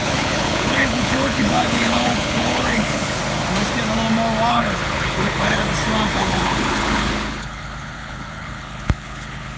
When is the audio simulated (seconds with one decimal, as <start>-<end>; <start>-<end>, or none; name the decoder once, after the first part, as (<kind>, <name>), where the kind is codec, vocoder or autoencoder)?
0.0-3.2 (codec, HILCodec); 4.5-5.6; 6.1-9.6